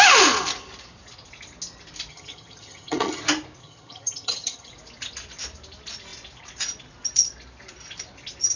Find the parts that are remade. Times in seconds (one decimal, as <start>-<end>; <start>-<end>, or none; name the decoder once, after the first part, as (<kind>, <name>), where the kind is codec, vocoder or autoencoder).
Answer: 2.1-3.2 (vocoder, HiFi-GAN); 3.6-4.7